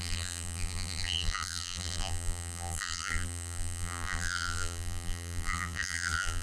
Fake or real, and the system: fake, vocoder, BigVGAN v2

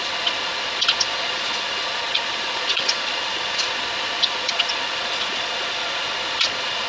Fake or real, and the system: fake, vocoder, Vocos